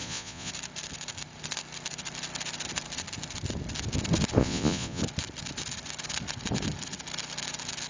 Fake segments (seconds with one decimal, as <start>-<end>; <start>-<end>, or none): 0.0-0.5; 4.4-5.0